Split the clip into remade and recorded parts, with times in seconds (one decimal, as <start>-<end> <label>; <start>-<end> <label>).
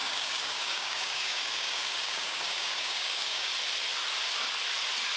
0.0-3.5 remade; 3.5-5.2 recorded